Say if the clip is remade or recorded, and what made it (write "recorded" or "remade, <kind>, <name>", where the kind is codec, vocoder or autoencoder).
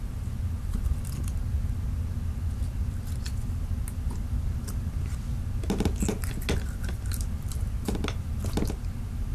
recorded